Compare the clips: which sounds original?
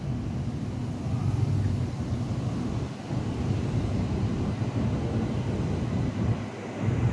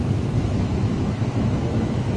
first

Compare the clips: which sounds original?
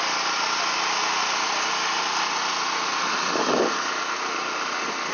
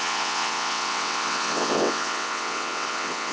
first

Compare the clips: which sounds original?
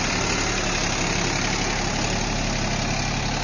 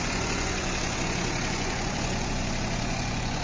first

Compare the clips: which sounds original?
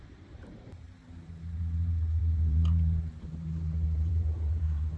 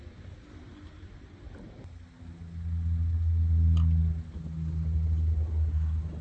second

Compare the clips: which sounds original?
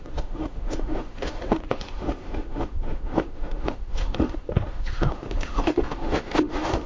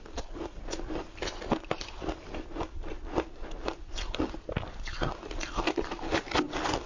second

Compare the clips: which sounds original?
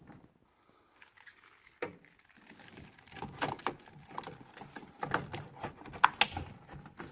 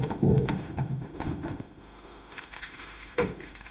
first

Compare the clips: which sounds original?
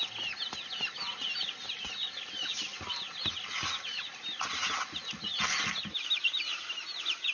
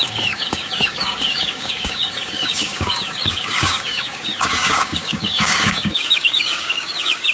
first